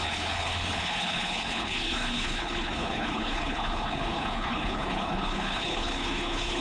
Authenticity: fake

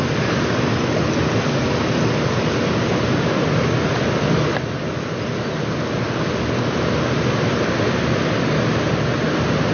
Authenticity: real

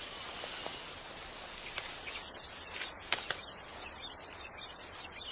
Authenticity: real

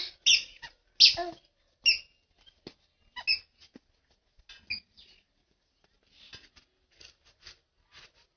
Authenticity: real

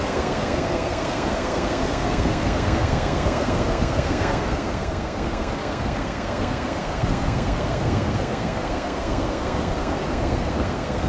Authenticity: fake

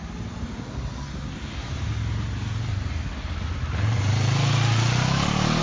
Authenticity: real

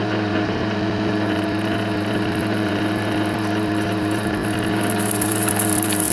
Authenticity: fake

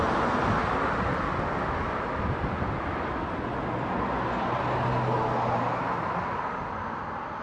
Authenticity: real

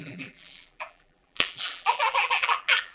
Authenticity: fake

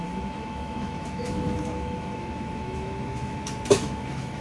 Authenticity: fake